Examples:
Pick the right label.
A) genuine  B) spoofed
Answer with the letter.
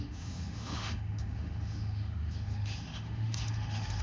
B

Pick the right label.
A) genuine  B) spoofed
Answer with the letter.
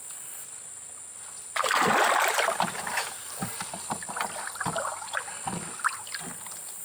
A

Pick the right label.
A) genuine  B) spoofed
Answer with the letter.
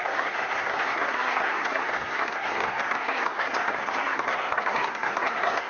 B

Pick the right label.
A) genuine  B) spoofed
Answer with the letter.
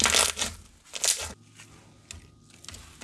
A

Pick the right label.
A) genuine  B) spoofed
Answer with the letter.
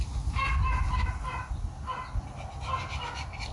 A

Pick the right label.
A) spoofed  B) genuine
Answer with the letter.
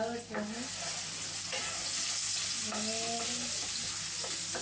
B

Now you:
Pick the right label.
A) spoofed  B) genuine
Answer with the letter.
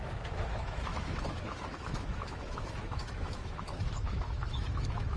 A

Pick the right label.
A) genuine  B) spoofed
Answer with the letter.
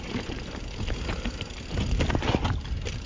A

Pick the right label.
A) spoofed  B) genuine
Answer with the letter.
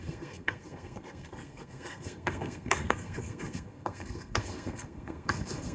A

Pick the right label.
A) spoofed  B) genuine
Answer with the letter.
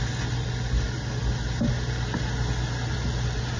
B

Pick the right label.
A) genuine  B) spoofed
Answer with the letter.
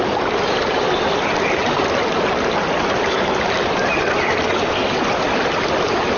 A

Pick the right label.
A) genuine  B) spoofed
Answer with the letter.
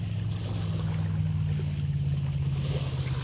A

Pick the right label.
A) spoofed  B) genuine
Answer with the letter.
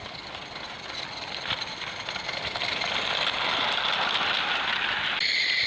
B